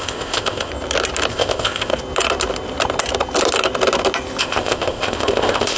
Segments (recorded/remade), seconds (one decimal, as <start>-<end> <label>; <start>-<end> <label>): 0.0-0.7 remade; 0.7-1.3 recorded; 1.3-1.9 remade; 1.9-4.4 recorded; 4.4-5.8 remade